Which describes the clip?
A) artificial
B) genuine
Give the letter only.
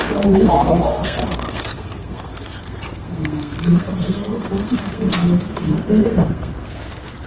A